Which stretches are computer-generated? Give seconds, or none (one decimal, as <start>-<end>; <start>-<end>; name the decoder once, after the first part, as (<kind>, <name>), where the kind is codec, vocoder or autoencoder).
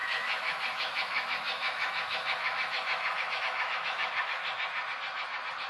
0.0-4.4 (autoencoder, DAC-VAE)